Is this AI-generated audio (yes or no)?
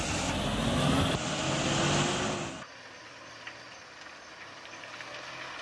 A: no